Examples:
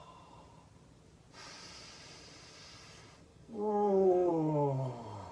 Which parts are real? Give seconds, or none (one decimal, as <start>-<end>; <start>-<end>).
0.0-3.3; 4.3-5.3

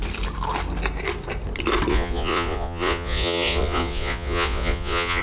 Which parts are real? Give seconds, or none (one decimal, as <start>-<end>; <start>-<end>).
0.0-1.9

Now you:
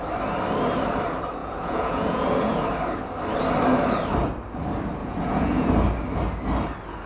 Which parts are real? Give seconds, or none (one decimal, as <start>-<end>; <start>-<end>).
0.0-1.4; 2.6-5.0; 5.7-7.1

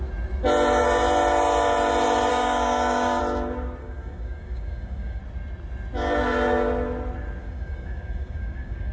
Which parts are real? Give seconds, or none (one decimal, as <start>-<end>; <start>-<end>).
0.0-2.3; 3.2-3.8; 5.2-7.4